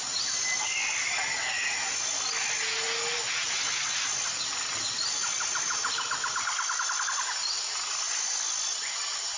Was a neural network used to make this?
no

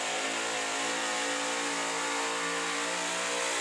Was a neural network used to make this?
no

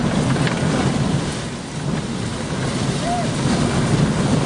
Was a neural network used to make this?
no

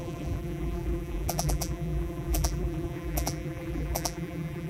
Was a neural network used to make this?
yes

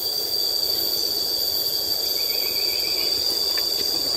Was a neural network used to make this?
no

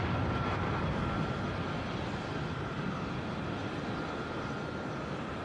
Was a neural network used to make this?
no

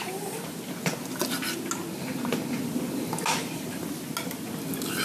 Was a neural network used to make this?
no